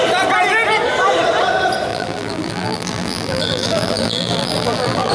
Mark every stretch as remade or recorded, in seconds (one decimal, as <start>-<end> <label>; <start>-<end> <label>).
0.0-1.9 recorded; 1.9-5.1 remade